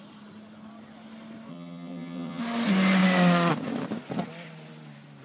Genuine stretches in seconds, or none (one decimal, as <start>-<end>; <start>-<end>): 0.0-1.5; 2.4-5.2